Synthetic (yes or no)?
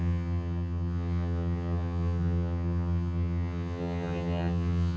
yes